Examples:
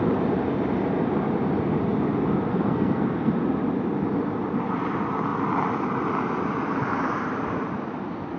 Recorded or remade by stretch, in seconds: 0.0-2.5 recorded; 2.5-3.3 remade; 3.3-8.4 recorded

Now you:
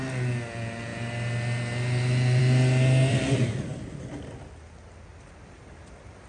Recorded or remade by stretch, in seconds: 0.0-6.3 recorded

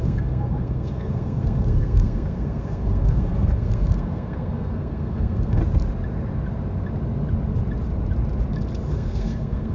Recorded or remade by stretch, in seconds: 0.0-5.6 remade; 5.6-8.9 recorded; 8.9-9.7 remade